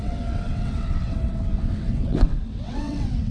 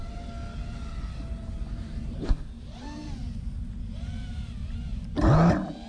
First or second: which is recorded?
second